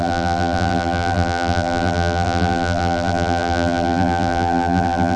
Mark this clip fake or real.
fake